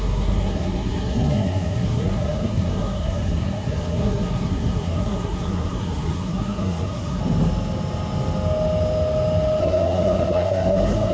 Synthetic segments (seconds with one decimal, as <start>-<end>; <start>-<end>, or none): 0.0-7.2; 9.6-11.1